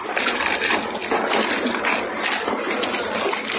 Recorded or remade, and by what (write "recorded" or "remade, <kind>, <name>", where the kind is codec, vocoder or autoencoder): recorded